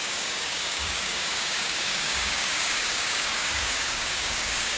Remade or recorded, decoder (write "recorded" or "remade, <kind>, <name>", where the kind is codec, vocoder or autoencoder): remade, codec, DAC